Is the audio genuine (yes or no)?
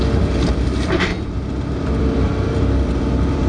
no